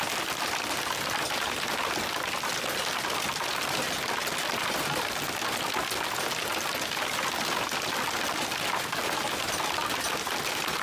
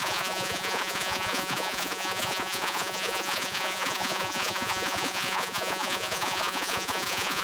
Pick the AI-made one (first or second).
second